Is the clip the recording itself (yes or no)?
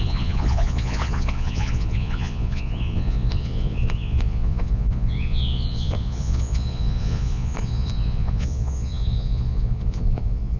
no